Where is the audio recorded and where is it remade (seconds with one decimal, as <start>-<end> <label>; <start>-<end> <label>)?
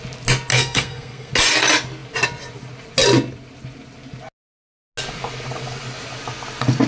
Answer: 0.0-0.5 recorded; 0.5-1.3 remade; 1.3-6.9 recorded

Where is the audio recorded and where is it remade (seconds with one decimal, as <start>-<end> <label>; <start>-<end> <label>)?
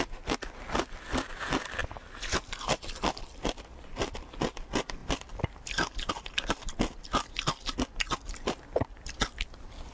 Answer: 0.0-9.9 recorded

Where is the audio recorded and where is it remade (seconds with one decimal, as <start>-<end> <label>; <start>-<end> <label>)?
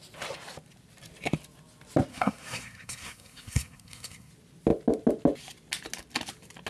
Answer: 0.0-2.1 recorded; 2.1-4.3 remade; 4.3-6.7 recorded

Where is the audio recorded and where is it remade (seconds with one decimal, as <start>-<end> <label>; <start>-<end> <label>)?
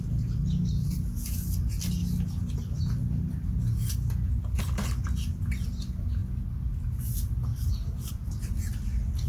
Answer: 0.0-9.3 recorded